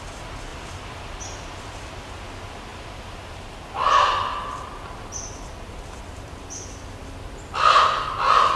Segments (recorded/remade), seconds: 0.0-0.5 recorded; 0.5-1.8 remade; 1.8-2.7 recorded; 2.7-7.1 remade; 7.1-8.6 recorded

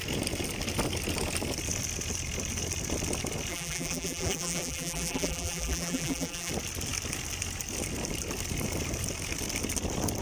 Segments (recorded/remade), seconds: 0.0-3.5 recorded; 3.5-6.5 remade; 6.5-10.2 recorded

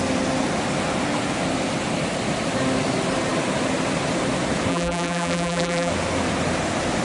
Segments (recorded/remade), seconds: 0.0-4.7 recorded; 4.7-5.9 remade; 5.9-7.0 recorded

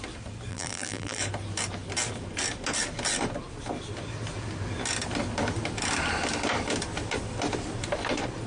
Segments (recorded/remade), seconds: 0.0-0.5 recorded; 0.5-1.2 remade; 1.2-8.5 recorded

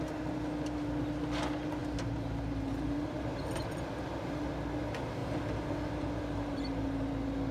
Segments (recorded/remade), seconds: 0.0-1.8 recorded; 1.8-3.6 remade; 3.6-5.2 recorded; 5.2-7.1 remade; 7.1-7.5 recorded

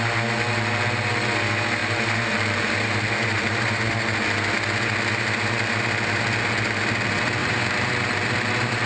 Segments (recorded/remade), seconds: 0.0-1.8 recorded; 1.8-3.8 remade; 3.8-7.4 recorded; 7.4-7.9 remade; 7.9-8.9 recorded

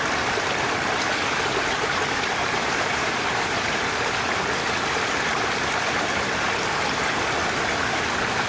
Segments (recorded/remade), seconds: 0.0-1.5 recorded; 1.5-4.4 remade; 4.4-8.5 recorded

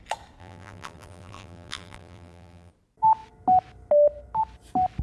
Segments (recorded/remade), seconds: 0.0-0.4 recorded; 0.4-2.7 remade; 2.7-5.0 recorded